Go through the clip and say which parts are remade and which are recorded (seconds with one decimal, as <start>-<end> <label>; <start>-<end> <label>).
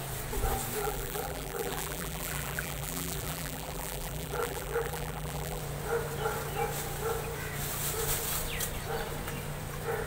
0.0-0.8 recorded; 0.8-5.6 remade; 5.6-10.1 recorded